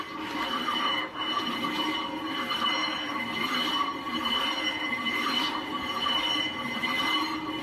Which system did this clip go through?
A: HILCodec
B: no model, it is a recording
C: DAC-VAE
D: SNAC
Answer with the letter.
B